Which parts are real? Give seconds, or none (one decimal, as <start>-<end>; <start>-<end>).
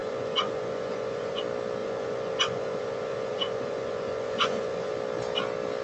1.4-1.8; 4.9-5.8